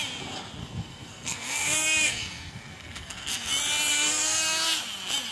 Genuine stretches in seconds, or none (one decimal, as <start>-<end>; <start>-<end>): 0.0-0.6; 3.5-3.9; 4.8-5.3